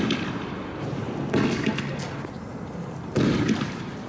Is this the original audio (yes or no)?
yes